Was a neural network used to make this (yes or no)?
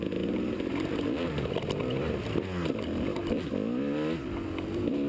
no